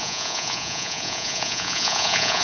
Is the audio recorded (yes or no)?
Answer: no